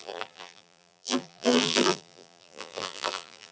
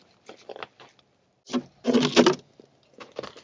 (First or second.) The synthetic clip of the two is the first